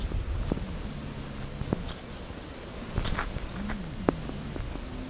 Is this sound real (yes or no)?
yes